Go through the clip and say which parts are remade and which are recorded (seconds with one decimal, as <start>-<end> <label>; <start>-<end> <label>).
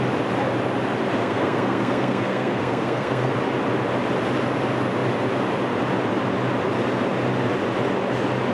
0.0-1.2 recorded; 1.2-3.3 remade; 3.3-8.5 recorded